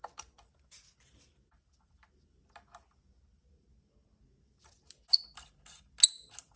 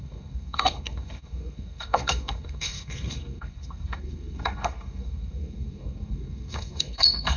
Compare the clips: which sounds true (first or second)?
first